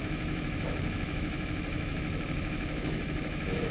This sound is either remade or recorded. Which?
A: remade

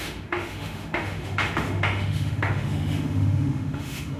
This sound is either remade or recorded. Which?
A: remade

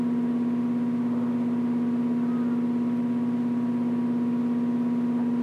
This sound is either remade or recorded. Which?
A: recorded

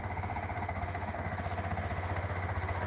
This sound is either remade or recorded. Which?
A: remade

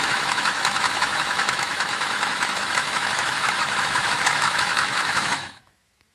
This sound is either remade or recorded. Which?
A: remade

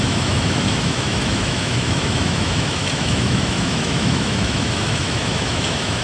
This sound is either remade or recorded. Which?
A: remade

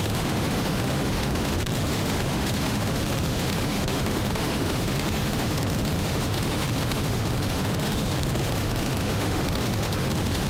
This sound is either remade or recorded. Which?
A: remade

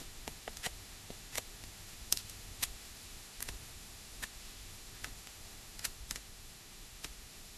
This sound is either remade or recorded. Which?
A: remade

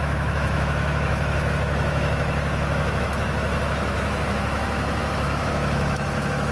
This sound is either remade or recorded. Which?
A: remade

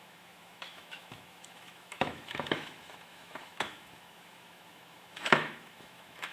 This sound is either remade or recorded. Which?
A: remade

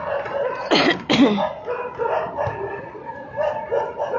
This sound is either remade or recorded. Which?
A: recorded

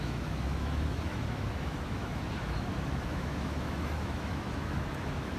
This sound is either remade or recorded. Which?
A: remade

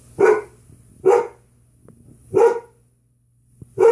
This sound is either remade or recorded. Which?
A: recorded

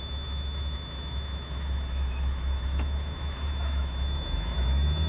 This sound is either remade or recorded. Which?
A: remade